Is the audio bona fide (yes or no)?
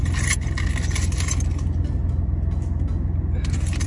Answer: yes